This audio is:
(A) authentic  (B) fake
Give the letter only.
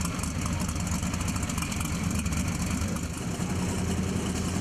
A